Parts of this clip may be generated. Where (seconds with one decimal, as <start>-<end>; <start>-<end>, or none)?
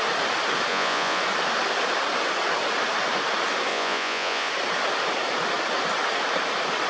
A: 0.7-1.2; 3.7-4.5